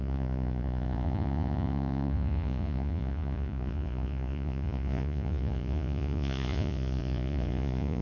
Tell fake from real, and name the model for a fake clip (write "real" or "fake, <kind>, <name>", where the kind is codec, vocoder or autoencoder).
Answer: fake, vocoder, Vocos